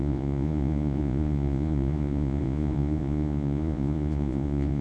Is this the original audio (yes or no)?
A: no